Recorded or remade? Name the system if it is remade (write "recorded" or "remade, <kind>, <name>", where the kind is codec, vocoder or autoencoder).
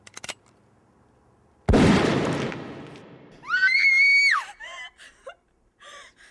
recorded